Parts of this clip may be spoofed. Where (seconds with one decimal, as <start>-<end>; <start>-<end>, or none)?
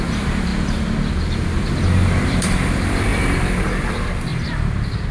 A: 0.0-0.5; 1.1-5.1